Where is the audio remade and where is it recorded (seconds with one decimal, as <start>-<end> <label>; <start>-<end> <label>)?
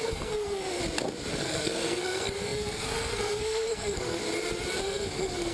0.0-0.8 remade; 0.8-1.3 recorded; 1.3-4.2 remade; 4.2-4.8 recorded; 4.8-5.5 remade